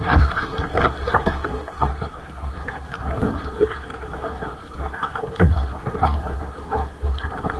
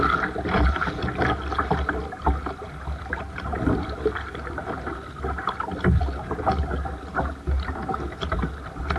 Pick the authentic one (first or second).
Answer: second